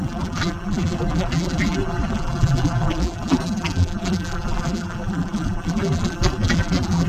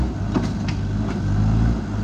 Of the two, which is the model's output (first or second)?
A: first